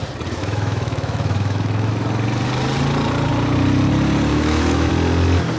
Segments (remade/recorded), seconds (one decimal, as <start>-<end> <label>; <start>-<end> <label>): 0.0-0.4 recorded; 0.4-1.9 remade; 1.9-4.3 recorded; 4.3-4.9 remade; 4.9-5.6 recorded